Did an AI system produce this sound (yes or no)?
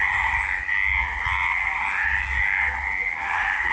no